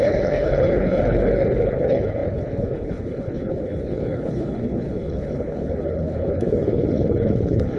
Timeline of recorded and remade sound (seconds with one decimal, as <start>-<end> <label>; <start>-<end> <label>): 0.0-7.8 remade